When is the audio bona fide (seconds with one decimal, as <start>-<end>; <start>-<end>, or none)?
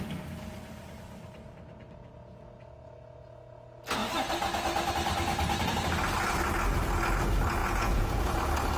0.0-7.6; 8.4-8.8